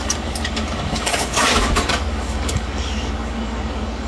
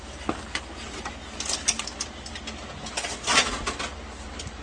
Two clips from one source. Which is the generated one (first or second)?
first